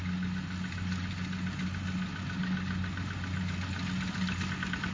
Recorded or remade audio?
recorded